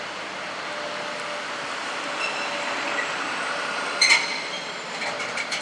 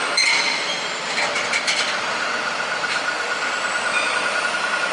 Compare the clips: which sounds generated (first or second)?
first